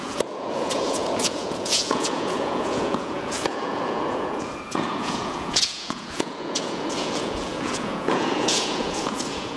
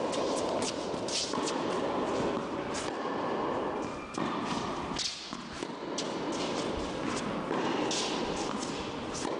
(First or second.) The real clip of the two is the second